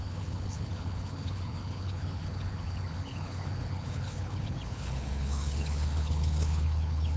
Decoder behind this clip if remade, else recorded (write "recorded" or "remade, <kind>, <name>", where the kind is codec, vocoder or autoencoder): remade, codec, HILCodec